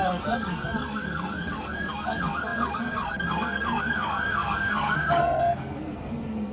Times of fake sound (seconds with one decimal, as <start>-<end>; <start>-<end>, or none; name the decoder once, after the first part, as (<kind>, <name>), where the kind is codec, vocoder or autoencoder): 0.0-6.5 (codec, SNAC)